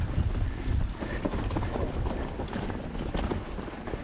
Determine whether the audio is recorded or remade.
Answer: recorded